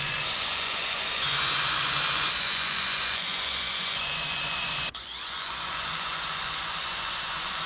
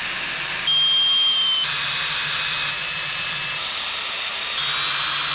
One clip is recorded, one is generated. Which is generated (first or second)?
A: first